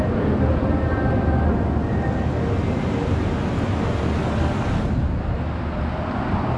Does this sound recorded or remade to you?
recorded